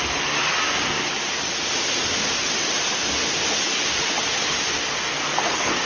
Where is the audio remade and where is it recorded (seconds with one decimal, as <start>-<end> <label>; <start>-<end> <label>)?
0.0-5.1 recorded; 5.1-5.9 remade